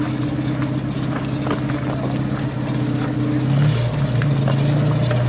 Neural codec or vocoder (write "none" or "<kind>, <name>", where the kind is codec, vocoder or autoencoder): none